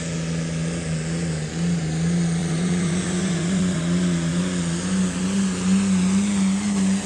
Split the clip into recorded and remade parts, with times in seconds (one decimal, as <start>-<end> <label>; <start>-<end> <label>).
0.0-2.4 recorded; 2.4-3.8 remade; 3.8-7.1 recorded

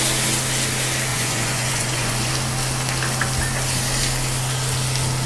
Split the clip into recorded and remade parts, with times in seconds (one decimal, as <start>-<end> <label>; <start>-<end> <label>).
0.0-1.1 recorded; 1.1-2.3 remade; 2.3-5.3 recorded